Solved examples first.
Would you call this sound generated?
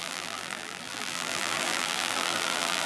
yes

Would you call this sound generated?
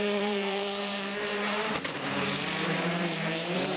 yes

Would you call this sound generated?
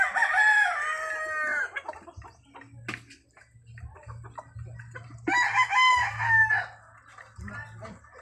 no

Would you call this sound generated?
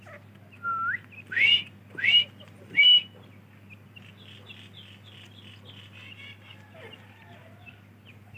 no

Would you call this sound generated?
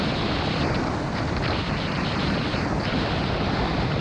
yes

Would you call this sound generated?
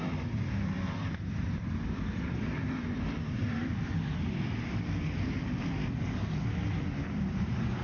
yes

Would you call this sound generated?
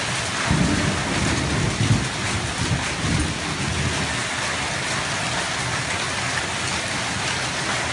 no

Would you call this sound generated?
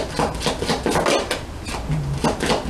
no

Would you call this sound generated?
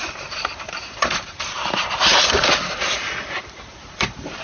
yes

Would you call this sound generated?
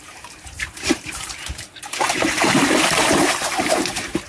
yes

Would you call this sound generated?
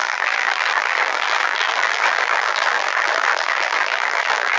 yes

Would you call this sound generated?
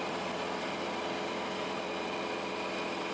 yes